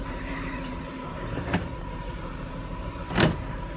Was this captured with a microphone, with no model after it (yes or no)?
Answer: no